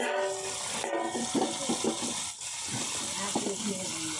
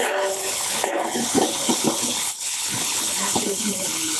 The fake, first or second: second